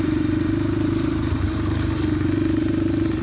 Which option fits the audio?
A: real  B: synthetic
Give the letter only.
B